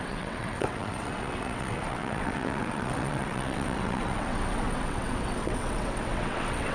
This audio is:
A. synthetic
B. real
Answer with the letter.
A